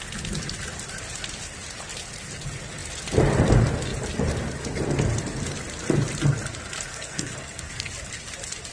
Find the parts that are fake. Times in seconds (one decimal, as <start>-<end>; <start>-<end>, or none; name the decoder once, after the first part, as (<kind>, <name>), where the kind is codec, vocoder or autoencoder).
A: 6.9-7.9 (codec, SNAC)